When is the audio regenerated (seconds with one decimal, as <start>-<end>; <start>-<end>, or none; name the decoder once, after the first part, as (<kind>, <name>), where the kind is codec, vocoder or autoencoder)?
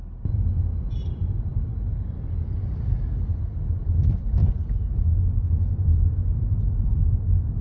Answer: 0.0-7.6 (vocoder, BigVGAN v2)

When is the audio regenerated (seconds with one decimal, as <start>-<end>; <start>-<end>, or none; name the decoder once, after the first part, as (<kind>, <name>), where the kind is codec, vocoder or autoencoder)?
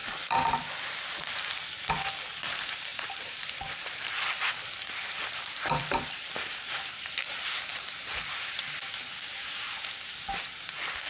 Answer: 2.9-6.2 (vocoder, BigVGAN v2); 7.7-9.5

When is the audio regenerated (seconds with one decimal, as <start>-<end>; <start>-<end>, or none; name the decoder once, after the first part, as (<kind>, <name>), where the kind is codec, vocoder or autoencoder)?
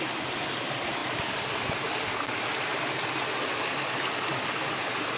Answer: none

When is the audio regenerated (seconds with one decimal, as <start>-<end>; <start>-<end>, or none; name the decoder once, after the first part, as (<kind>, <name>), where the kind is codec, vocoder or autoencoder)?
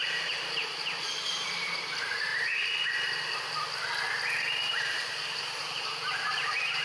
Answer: 0.0-0.6 (vocoder, BigVGAN v2); 1.3-2.3; 4.7-6.8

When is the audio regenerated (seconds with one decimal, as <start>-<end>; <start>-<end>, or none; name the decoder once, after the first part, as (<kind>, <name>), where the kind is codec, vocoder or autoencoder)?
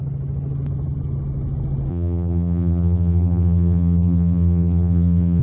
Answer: 1.9-5.4 (vocoder, BigVGAN v2)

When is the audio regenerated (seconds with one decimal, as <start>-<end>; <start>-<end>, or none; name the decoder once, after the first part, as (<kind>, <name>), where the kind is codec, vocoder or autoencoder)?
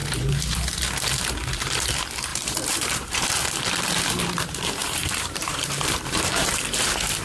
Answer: 0.0-0.6 (vocoder, BigVGAN v2); 2.3-3.3; 4.8-6.5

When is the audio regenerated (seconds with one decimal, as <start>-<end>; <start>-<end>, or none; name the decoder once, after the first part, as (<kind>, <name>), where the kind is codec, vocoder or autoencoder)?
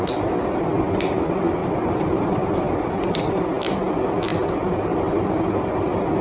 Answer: 1.6-2.9 (vocoder, BigVGAN v2)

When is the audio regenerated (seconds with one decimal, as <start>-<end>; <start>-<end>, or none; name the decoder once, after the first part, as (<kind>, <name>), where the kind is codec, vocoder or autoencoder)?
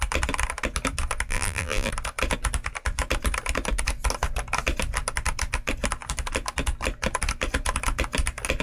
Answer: 1.3-1.9 (vocoder, BigVGAN v2)